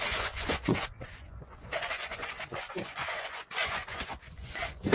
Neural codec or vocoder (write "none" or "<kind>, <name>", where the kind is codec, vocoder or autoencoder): vocoder, Vocos